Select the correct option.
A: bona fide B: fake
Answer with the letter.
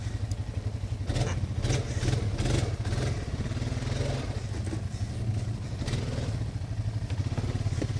A